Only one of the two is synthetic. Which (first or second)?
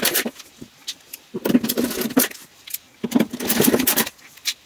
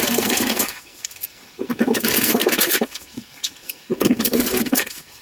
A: second